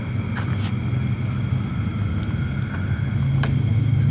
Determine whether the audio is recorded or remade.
recorded